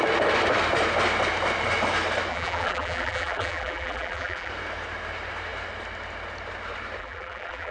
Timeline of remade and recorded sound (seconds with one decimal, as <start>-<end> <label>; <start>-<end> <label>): 0.0-2.3 recorded; 2.3-4.5 remade; 4.5-7.0 recorded; 7.0-7.7 remade